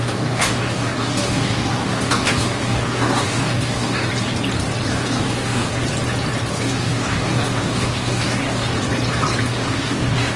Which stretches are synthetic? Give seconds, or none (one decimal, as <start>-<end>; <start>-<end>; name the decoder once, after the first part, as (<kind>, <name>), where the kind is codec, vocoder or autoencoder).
0.0-4.1 (codec, DAC); 4.9-5.7; 6.5-8.7; 9.4-10.4